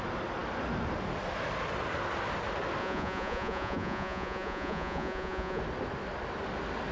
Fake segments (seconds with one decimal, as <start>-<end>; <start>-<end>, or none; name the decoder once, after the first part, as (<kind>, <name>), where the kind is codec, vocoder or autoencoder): 2.8-5.6 (vocoder, Vocos)